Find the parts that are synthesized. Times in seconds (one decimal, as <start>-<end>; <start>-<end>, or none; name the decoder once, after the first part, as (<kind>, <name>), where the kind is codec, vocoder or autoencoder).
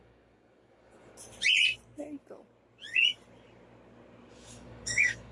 0.0-1.1 (codec, DAC); 4.3-5.3